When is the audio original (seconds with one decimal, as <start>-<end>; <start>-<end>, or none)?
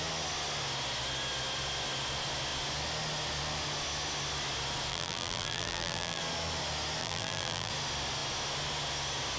0.0-4.9; 6.2-7.0; 7.7-9.4